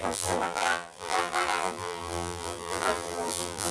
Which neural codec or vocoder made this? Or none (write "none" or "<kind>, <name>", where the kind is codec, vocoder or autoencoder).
vocoder, BigVGAN v2